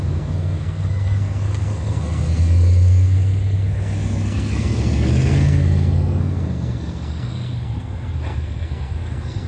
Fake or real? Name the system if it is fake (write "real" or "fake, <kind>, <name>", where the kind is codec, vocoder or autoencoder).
fake, codec, SNAC